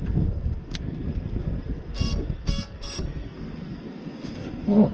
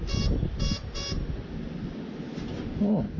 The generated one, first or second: first